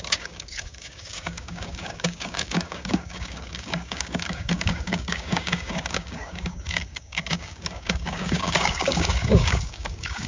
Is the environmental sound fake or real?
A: fake